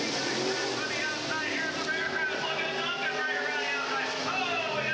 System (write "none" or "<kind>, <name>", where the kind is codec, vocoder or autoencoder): none